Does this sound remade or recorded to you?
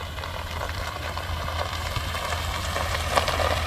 remade